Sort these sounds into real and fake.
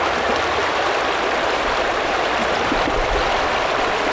real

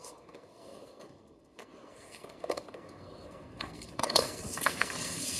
fake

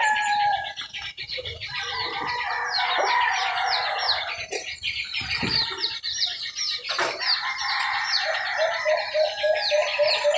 fake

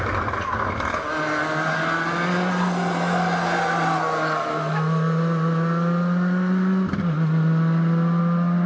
real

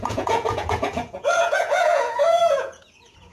fake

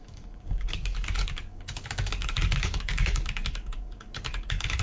fake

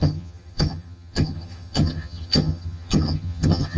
fake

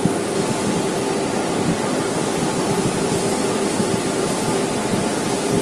real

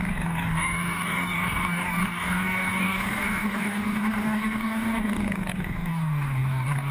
fake